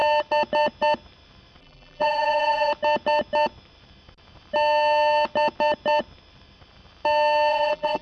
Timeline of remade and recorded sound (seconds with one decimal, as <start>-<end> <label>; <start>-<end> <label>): 0.0-1.6 recorded; 1.6-2.7 remade; 2.7-7.5 recorded; 7.5-8.0 remade